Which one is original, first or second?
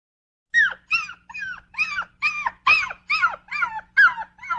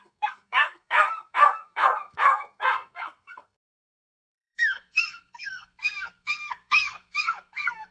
first